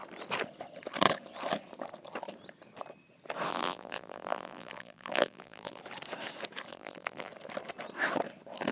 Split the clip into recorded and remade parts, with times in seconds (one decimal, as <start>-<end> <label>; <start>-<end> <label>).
0.0-3.5 recorded; 3.5-5.8 remade; 5.8-6.7 recorded; 6.7-7.3 remade; 7.3-8.7 recorded